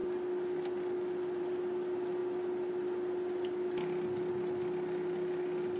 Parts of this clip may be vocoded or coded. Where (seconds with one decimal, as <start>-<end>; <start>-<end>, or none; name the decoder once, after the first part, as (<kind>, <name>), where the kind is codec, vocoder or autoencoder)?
none